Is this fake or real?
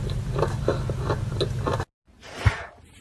real